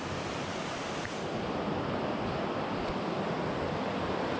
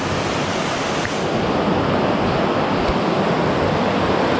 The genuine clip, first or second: second